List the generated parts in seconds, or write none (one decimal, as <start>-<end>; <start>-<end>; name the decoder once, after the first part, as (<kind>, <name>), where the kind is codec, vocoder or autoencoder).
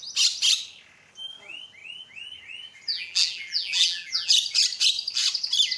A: 2.9-4.3 (vocoder, BigVGAN v2)